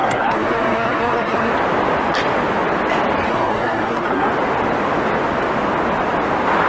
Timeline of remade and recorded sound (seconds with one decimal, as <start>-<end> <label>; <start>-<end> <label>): 0.0-1.5 remade; 1.5-3.3 recorded; 3.3-4.3 remade; 4.3-6.7 recorded